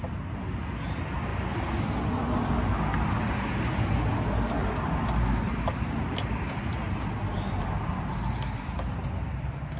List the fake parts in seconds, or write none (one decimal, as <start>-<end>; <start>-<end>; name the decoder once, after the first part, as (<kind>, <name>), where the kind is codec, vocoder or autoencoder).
none